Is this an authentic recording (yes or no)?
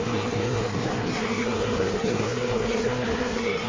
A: no